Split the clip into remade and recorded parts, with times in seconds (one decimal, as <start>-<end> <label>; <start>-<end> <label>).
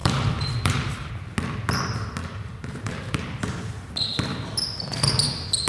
0.0-1.1 remade; 1.1-2.2 recorded; 2.2-3.9 remade; 3.9-5.7 recorded